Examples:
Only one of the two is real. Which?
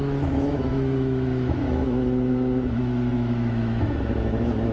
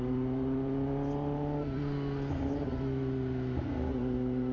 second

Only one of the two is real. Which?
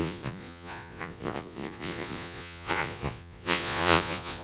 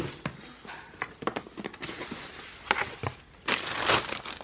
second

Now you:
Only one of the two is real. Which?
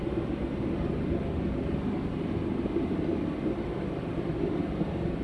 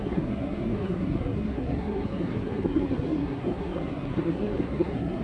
first